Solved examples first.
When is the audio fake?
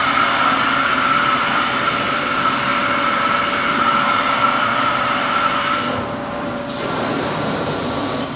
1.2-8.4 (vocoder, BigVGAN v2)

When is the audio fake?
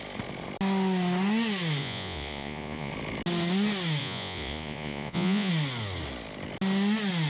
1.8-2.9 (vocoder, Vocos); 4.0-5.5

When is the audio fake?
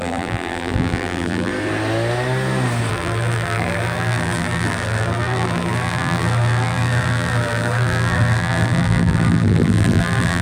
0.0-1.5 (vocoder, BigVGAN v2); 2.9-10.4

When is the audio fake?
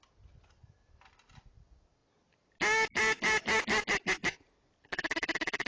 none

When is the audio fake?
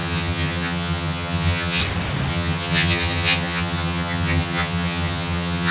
0.0-1.8 (vocoder, HiFi-GAN); 2.3-5.7